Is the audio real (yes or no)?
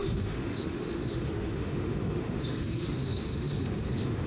no